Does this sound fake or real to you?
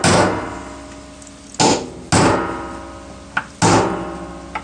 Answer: real